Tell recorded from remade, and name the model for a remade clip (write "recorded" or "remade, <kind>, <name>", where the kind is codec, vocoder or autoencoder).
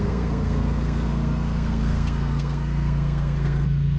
remade, codec, SNAC